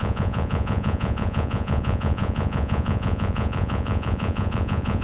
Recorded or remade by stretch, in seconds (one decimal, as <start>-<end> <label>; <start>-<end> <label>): 0.0-5.0 remade